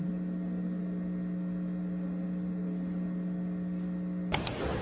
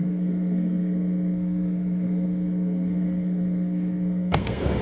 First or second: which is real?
first